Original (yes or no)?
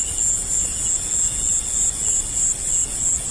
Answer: yes